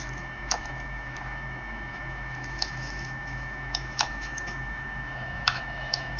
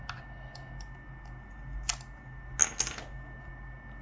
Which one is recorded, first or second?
second